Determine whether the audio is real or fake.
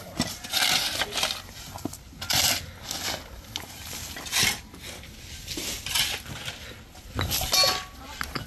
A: real